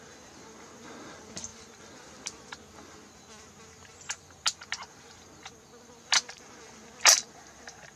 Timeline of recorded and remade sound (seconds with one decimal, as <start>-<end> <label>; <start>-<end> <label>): 0.0-8.0 recorded